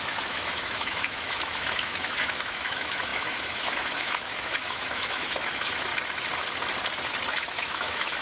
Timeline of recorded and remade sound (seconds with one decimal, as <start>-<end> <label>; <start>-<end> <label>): 0.0-5.9 remade; 5.9-7.4 recorded; 7.4-8.2 remade